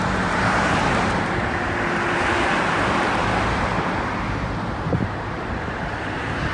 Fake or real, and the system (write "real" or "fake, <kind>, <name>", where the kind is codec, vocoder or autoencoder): fake, vocoder, BigVGAN v2